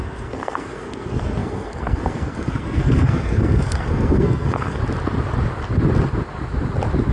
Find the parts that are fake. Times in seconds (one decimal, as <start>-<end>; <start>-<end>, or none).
0.0-4.8